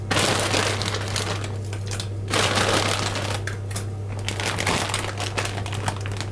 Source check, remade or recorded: recorded